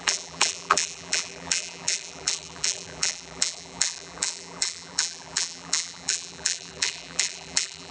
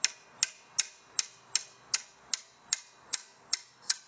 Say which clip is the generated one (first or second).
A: first